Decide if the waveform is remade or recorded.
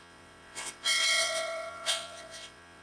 remade